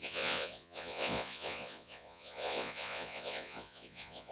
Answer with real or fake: fake